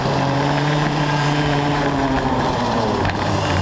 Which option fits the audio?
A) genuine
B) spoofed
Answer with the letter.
B